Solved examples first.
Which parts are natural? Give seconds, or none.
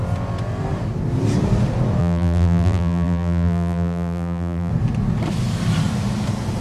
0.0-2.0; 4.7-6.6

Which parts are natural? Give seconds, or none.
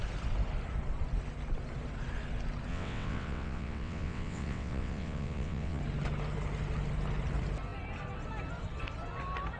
0.0-2.7; 5.8-9.6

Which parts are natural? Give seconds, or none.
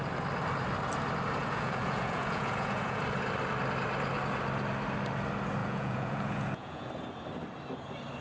0.0-1.4; 3.0-5.6; 6.9-8.2